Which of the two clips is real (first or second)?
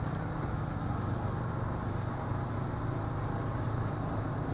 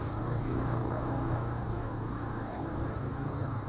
first